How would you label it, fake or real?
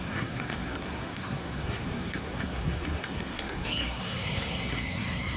fake